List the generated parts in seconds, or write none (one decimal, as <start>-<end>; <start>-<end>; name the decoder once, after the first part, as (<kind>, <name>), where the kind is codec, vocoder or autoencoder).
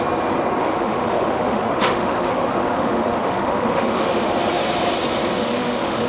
0.6-4.3 (autoencoder, DAC-VAE); 5.4-6.1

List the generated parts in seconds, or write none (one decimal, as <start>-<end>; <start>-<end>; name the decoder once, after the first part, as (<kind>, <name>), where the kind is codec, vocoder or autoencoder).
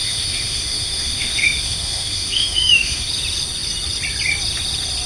0.0-3.1 (autoencoder, DAC-VAE)